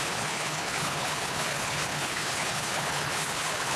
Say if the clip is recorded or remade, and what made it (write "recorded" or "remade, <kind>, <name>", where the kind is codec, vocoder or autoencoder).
remade, codec, HILCodec